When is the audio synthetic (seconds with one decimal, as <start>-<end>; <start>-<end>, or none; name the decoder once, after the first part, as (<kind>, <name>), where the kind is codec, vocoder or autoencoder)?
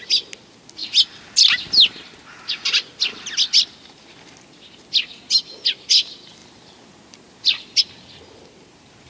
none